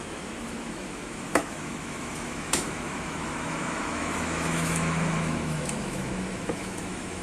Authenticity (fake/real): fake